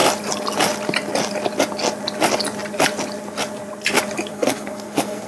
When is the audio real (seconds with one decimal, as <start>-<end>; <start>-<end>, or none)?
0.0-4.3